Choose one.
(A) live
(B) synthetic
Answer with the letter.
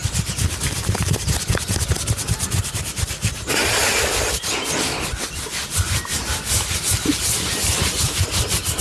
A